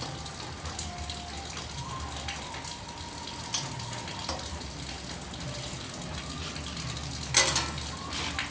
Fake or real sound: real